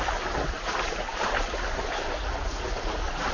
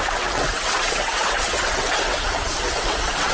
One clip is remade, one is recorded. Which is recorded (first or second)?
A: first